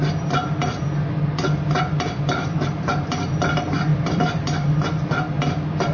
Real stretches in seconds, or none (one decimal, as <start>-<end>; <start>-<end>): 0.0-3.9; 4.4-5.9

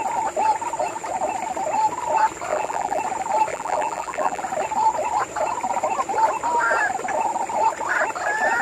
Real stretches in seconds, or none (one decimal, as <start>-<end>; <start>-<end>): 0.0-2.5; 3.0-3.5; 4.4-8.6

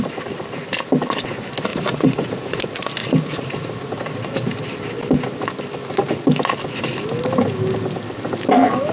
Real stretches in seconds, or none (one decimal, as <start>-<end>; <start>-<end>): 0.0-1.7; 2.6-3.0; 3.9-8.9

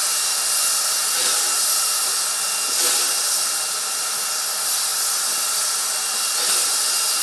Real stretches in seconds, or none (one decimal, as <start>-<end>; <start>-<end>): 0.0-7.2

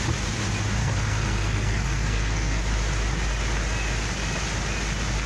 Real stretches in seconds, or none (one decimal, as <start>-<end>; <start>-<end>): 0.0-0.8; 2.6-5.3

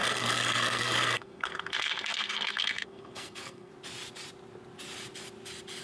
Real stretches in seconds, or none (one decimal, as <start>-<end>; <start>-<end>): 3.7-5.8